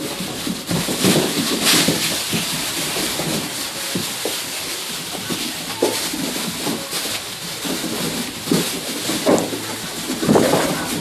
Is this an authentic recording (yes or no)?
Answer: yes